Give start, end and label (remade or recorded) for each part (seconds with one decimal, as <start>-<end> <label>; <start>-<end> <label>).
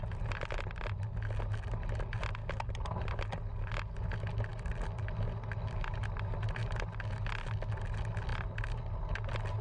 0.0-9.6 recorded